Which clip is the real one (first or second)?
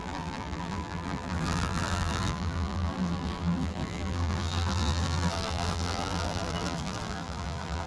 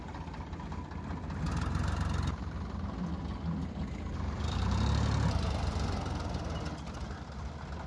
second